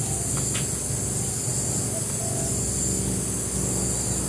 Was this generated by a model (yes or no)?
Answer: no